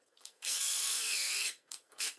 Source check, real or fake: fake